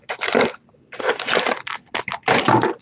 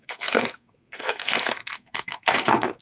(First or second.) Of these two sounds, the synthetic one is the second